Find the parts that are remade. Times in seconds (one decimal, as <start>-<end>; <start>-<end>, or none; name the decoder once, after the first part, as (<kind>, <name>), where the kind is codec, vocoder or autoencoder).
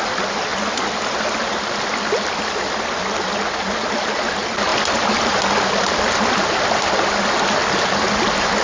none